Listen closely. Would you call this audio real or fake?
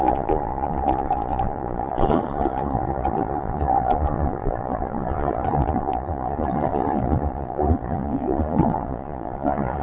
fake